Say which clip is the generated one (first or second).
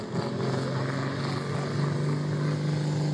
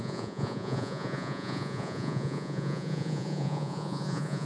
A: second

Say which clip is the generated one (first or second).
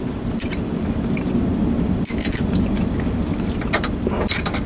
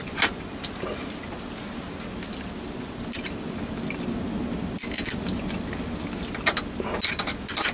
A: first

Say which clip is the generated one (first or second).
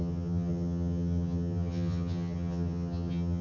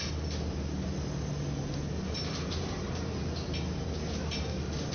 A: first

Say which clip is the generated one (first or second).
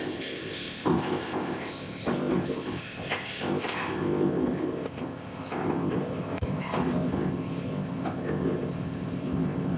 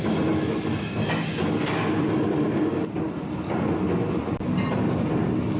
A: first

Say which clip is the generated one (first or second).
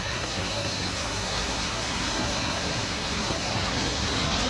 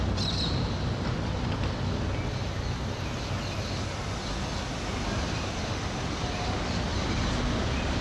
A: first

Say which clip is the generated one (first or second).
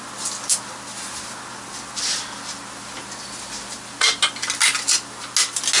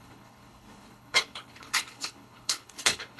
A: second